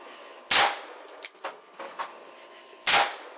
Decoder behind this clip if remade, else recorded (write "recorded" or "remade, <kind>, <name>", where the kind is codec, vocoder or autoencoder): recorded